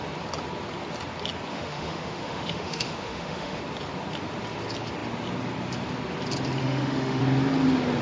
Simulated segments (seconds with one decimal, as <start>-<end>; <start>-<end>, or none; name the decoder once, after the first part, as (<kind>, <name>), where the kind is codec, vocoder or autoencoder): 1.5-3.6 (autoencoder, DAC-VAE); 6.6-7.2